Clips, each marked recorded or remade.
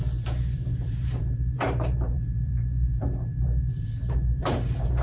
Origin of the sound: remade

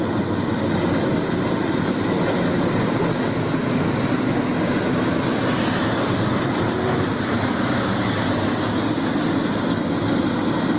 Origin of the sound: recorded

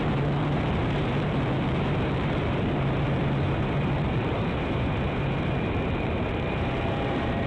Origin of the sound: remade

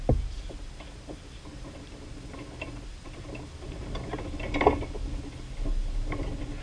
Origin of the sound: recorded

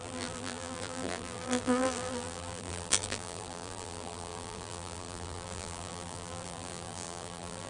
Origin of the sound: remade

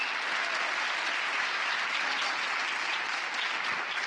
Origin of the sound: recorded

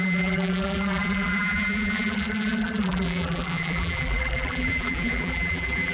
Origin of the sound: remade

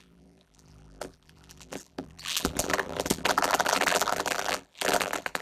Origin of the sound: remade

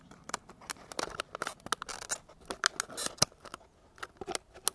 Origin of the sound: recorded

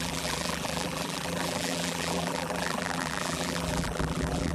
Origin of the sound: remade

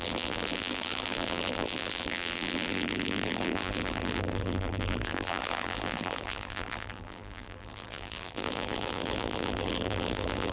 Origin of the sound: remade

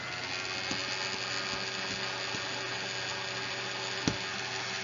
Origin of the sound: recorded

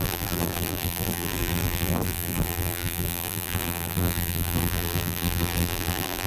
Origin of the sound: remade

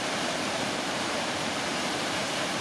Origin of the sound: remade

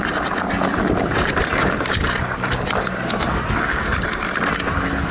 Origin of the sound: recorded